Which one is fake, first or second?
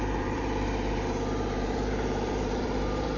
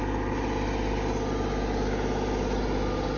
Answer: first